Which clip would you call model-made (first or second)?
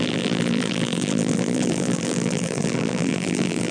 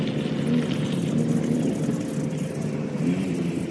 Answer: first